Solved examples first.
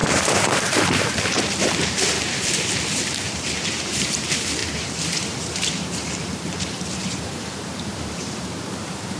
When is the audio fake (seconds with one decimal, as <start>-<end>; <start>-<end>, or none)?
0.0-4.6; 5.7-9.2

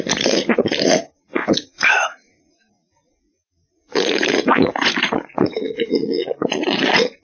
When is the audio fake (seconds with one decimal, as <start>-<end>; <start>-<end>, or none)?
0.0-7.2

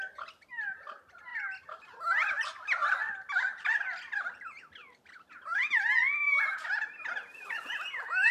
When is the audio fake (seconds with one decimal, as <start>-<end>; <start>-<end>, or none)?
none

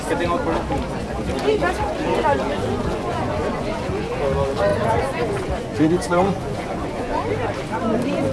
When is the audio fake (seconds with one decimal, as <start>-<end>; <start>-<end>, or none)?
2.5-4.1; 4.7-7.3